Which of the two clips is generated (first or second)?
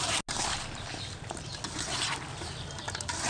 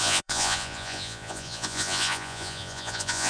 second